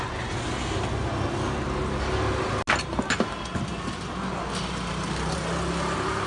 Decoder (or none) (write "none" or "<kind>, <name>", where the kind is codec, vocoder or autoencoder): none